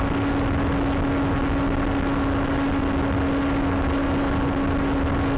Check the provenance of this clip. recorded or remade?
recorded